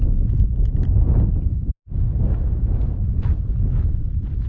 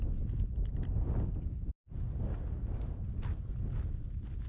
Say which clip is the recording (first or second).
second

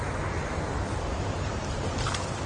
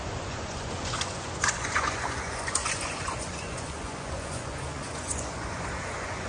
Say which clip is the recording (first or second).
first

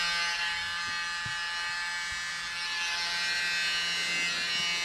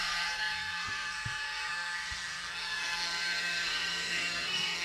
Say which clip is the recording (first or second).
first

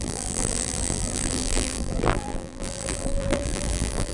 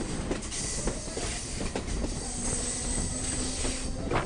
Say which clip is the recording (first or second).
second